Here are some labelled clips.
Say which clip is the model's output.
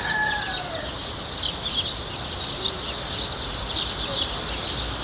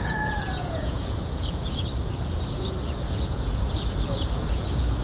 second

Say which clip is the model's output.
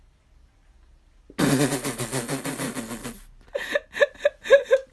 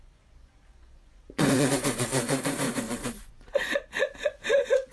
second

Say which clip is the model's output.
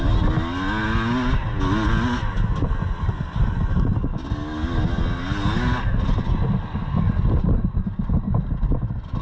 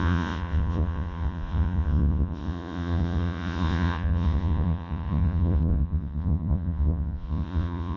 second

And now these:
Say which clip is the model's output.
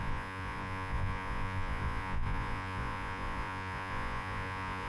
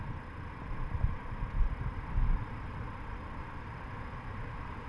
first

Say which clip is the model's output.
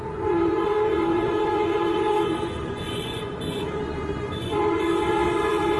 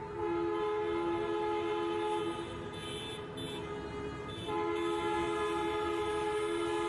first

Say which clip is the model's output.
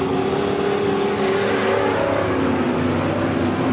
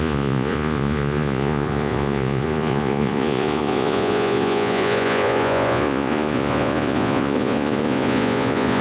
second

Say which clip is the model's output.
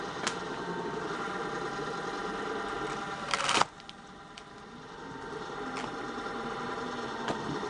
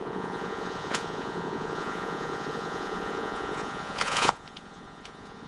second